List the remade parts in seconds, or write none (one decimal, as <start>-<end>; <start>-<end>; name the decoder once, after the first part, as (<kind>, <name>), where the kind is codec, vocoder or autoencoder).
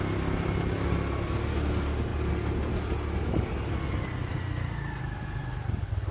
none